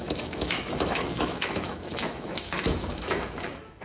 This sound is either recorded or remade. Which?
remade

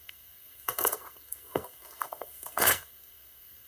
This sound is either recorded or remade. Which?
remade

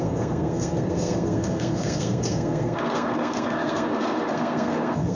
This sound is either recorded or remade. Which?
remade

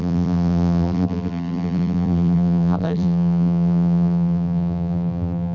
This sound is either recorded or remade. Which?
remade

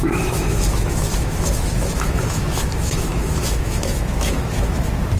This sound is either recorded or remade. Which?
remade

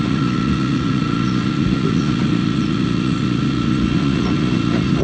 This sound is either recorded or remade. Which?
remade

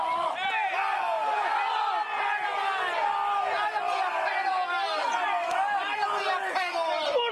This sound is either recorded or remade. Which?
recorded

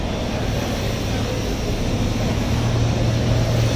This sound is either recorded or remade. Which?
recorded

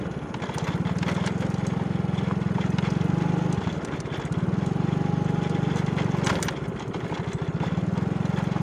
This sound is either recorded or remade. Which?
recorded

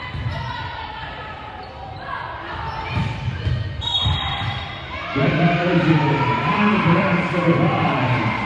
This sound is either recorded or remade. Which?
remade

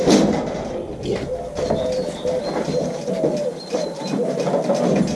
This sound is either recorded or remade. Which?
recorded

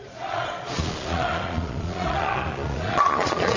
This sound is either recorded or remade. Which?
remade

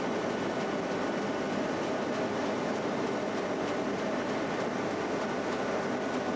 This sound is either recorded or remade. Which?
recorded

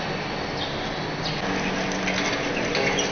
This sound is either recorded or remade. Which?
recorded